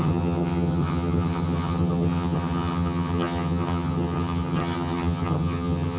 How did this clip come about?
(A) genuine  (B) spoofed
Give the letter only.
B